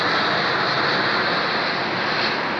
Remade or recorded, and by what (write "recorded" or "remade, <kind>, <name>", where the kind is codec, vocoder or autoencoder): recorded